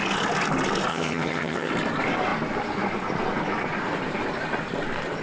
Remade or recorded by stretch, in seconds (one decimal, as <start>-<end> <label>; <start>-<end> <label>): 0.0-0.9 recorded; 0.9-1.7 remade; 1.7-5.2 recorded

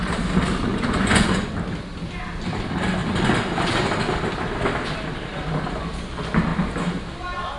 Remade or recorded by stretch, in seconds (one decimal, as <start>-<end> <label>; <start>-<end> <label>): 0.0-0.7 recorded; 0.7-1.5 remade; 1.5-7.6 recorded

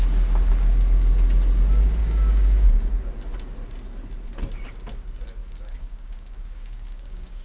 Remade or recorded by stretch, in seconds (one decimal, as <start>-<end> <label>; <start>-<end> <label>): 0.0-2.0 recorded; 2.0-3.0 remade; 3.0-5.4 recorded; 5.4-7.4 remade

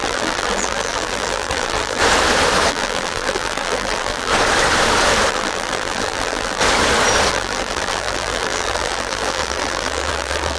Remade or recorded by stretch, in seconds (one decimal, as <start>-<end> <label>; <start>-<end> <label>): 0.0-2.0 remade; 2.0-2.7 recorded; 2.7-4.3 remade; 4.3-5.3 recorded; 5.3-6.6 remade; 6.6-7.3 recorded; 7.3-10.6 remade

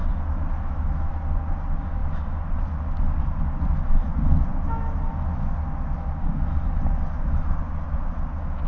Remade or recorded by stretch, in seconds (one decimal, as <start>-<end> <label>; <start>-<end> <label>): 0.0-8.7 recorded

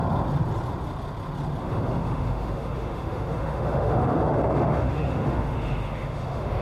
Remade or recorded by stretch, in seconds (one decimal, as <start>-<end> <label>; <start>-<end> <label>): 0.0-1.6 recorded; 1.6-6.6 remade

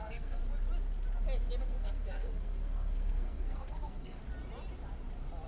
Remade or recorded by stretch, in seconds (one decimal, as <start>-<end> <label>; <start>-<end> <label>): 0.0-0.4 remade; 0.4-1.6 recorded; 1.6-4.2 remade; 4.2-5.5 recorded